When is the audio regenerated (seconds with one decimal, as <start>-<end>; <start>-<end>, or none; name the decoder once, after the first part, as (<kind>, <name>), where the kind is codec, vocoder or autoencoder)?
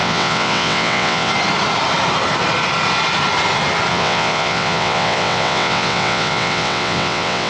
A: 0.0-1.3 (vocoder, WaveNeXt); 3.9-7.5